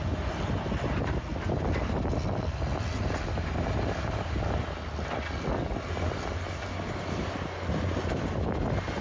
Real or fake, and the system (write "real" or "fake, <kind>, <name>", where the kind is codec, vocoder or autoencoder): real